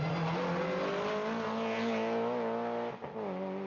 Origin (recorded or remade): recorded